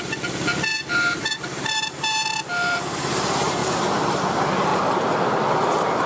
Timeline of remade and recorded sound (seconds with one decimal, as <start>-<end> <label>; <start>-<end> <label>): 0.0-0.7 recorded; 0.7-3.1 remade; 3.1-3.6 recorded; 3.6-4.2 remade; 4.2-6.1 recorded